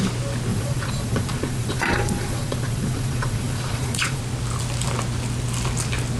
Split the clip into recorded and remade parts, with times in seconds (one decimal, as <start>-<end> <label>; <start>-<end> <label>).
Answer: 0.0-0.5 recorded; 0.5-4.2 remade; 4.2-6.2 recorded